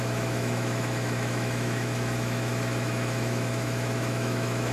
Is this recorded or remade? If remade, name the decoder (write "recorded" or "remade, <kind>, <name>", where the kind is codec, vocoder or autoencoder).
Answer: remade, autoencoder, DAC-VAE